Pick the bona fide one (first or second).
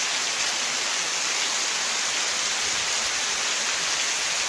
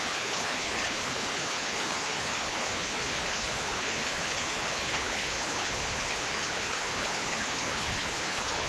first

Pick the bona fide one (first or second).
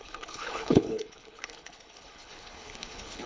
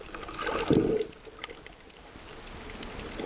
second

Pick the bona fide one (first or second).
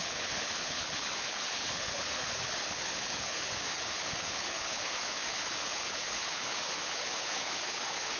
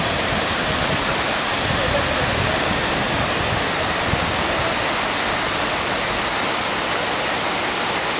second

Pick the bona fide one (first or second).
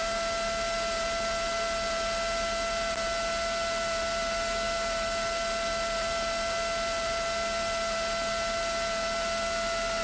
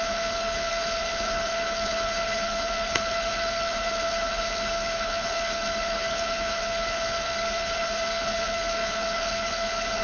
first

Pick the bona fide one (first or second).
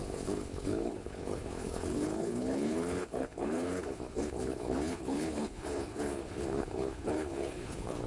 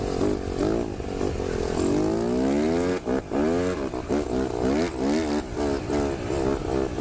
second